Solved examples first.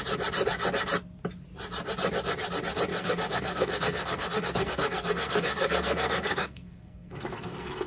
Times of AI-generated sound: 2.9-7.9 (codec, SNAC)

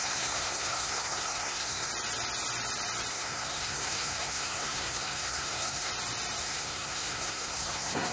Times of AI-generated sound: 0.0-1.9 (codec, SNAC); 3.1-5.9; 6.4-8.1

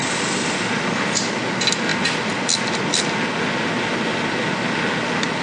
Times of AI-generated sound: none

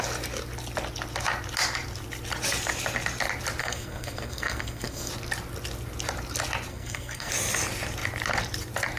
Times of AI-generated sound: 3.6-5.1 (codec, SNAC); 6.7-7.3

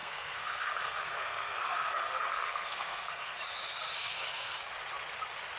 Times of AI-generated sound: 0.0-3.4 (codec, SNAC); 4.0-4.7